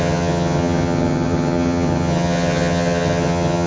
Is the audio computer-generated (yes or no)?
yes